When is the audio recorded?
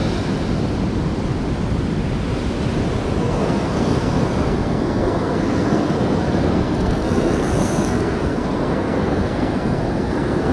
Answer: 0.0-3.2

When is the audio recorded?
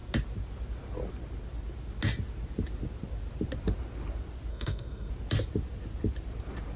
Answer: 0.0-4.5; 5.1-6.8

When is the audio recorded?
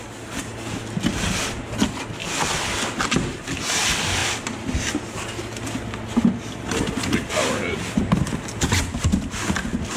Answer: 0.0-10.0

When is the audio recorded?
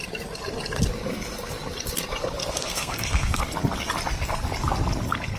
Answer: 0.0-2.4; 3.4-5.4